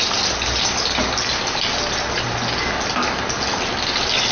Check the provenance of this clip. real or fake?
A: real